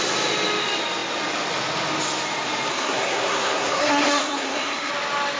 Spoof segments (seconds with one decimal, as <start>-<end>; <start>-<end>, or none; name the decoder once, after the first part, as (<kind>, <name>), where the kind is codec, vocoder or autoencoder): 2.7-4.9 (codec, SNAC)